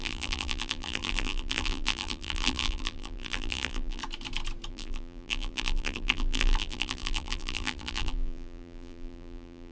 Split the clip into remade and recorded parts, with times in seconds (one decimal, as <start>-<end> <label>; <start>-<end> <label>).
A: 0.0-4.0 remade; 4.0-4.7 recorded; 4.7-9.7 remade